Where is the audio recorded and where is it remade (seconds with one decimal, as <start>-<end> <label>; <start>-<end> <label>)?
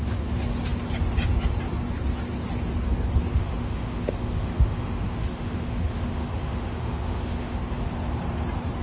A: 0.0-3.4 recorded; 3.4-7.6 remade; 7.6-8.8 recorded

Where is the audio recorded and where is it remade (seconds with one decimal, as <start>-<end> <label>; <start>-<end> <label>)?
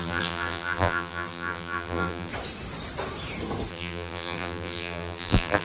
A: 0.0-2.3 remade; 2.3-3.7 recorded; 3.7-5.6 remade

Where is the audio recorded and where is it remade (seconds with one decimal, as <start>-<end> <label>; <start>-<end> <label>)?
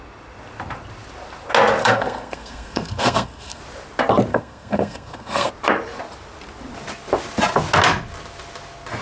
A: 0.0-1.8 recorded; 1.8-3.6 remade; 3.6-4.3 recorded; 4.3-5.5 remade; 5.5-9.0 recorded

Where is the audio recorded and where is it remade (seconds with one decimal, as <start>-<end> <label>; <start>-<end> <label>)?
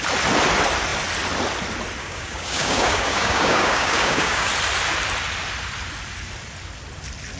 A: 0.0-2.0 recorded; 2.0-4.5 remade; 4.5-7.4 recorded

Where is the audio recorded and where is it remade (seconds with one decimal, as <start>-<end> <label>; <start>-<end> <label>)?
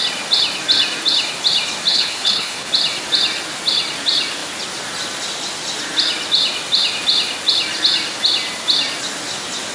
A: 0.0-1.9 recorded; 1.9-2.7 remade; 2.7-9.7 recorded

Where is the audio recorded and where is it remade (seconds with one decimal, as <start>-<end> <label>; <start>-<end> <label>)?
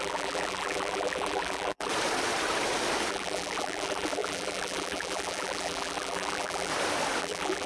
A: 0.0-1.9 remade; 1.9-3.1 recorded; 3.1-6.7 remade; 6.7-7.2 recorded; 7.2-7.7 remade